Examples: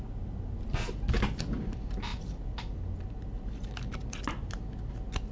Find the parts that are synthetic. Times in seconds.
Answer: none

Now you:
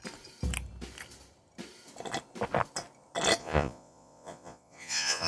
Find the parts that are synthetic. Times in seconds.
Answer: 3.4-5.3 (vocoder, Vocos)

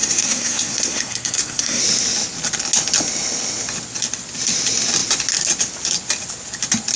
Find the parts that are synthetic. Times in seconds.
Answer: 0.0-1.8 (codec, SNAC)

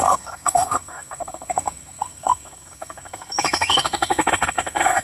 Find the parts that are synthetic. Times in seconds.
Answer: 0.0-5.0 (codec, SNAC)

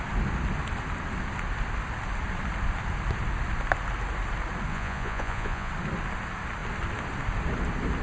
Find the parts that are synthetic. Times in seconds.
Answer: 4.7-5.7 (vocoder, Vocos)